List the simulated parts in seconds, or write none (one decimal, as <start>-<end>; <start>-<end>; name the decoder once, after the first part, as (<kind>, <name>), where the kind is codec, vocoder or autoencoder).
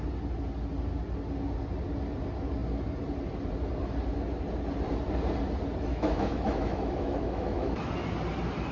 5.9-7.9 (autoencoder, DAC-VAE)